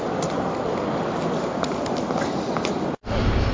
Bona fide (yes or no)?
yes